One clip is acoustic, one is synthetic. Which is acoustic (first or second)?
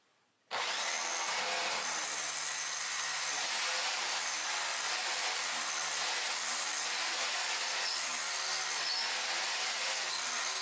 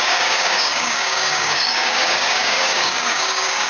first